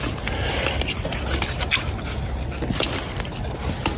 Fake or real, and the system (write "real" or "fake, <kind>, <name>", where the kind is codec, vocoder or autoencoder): real